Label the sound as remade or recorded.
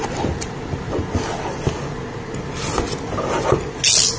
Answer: recorded